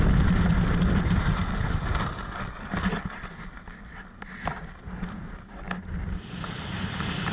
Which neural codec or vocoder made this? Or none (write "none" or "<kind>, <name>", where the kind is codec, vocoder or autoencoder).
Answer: none